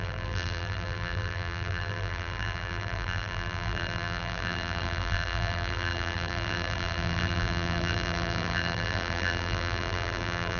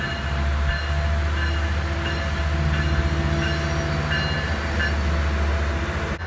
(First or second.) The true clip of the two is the second